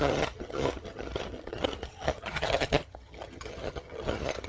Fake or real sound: fake